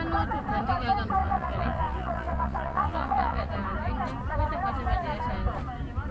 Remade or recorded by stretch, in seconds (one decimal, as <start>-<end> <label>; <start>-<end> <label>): 0.0-1.2 recorded; 1.2-3.5 remade; 3.5-6.1 recorded